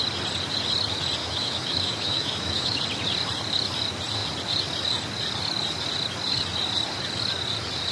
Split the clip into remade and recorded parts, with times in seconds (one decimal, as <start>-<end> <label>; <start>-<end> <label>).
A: 0.0-1.2 recorded; 1.2-2.8 remade; 2.8-7.9 recorded

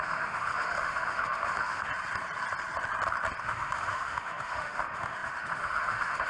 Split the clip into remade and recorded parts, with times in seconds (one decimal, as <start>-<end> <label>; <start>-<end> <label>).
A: 0.0-1.9 remade; 1.9-3.4 recorded; 3.4-6.3 remade

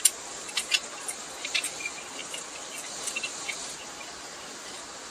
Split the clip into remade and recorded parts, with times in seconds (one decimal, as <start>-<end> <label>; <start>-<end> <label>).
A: 0.0-5.1 recorded

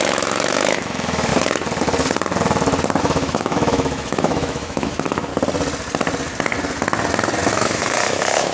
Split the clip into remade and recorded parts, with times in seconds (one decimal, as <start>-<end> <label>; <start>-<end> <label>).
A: 0.0-1.3 remade; 1.3-3.0 recorded; 3.0-5.3 remade; 5.3-7.5 recorded; 7.5-8.5 remade

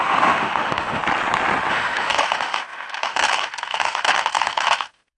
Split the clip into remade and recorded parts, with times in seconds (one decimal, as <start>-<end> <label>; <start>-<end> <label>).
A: 0.0-1.0 remade; 1.0-1.7 recorded; 1.7-5.2 remade

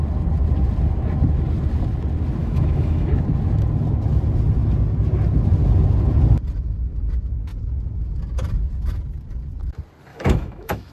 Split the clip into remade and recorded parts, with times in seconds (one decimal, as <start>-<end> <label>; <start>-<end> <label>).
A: 0.0-2.4 recorded; 2.4-3.1 remade; 3.1-10.1 recorded; 10.1-10.9 remade

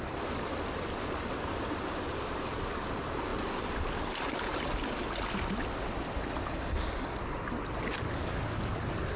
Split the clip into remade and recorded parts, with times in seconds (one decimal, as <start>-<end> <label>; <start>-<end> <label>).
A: 0.0-9.2 recorded